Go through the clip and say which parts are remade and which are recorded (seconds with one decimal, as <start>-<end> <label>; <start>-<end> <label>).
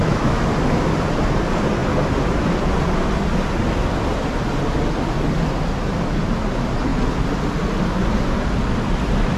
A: 0.0-0.5 remade; 0.5-9.4 recorded